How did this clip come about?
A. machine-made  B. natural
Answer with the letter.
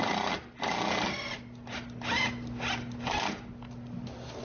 B